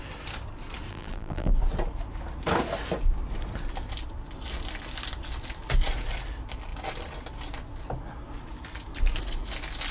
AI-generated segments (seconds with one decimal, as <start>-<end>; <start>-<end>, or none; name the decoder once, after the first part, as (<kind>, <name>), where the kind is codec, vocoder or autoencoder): 0.9-1.5 (vocoder, BigVGAN v2)